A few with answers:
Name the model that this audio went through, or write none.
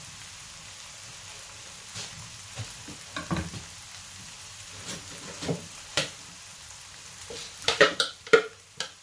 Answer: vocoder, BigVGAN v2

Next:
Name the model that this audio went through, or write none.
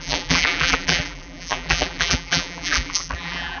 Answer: vocoder, BigVGAN v2